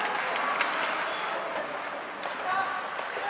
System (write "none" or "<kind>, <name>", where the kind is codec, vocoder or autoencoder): none